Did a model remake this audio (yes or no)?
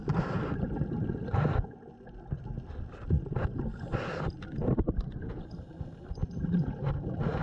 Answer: no